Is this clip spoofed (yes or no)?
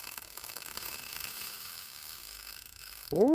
yes